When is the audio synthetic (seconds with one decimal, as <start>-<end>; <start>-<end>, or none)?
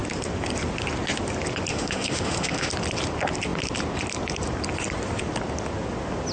1.7-2.7